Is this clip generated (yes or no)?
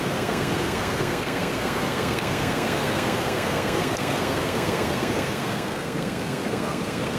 yes